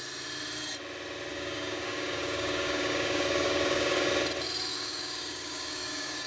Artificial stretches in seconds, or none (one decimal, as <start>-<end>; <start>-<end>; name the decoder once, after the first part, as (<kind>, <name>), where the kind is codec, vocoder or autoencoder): 1.3-4.1 (codec, DAC); 4.7-6.3